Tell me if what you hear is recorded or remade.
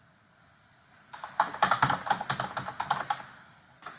recorded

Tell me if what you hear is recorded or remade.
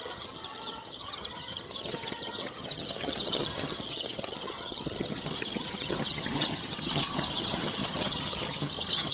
remade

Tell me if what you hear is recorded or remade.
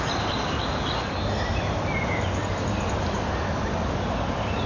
recorded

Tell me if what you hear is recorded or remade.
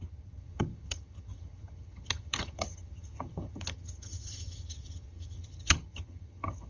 remade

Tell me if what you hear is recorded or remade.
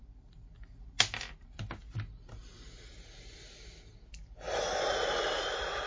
recorded